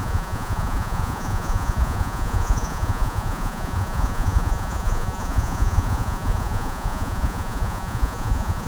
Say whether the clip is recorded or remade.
remade